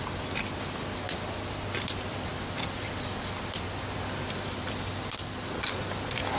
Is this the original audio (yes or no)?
yes